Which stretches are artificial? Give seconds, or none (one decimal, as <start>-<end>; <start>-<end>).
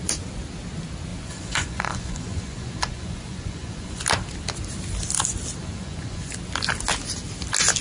1.1-4.0; 5.6-6.3